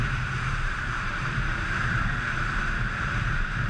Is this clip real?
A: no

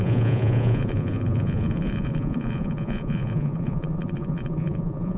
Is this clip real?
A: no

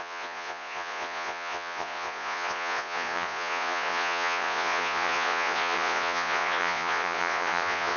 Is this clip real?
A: no